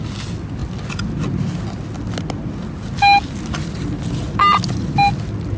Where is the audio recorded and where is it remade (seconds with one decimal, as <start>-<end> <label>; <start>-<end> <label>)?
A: 0.0-5.6 recorded